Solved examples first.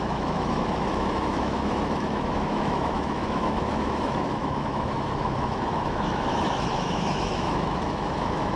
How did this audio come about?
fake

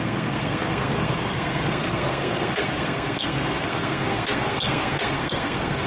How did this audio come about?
fake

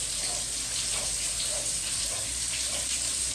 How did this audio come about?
real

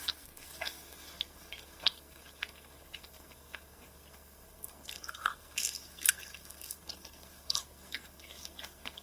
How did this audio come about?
fake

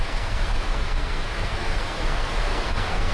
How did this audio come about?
fake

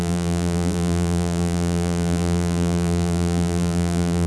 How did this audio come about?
fake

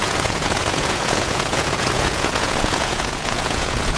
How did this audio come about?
fake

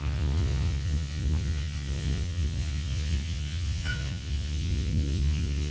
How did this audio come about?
fake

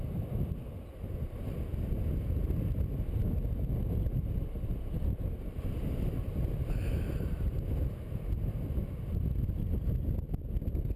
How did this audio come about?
real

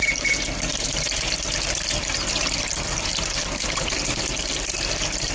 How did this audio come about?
real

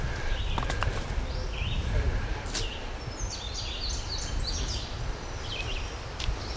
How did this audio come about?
real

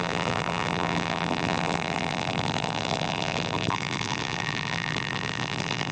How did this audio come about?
fake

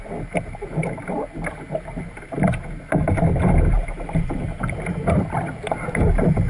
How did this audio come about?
real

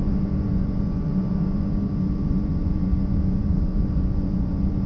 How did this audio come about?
fake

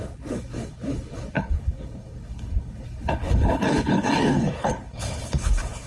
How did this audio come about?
fake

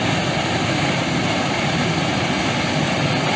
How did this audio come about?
real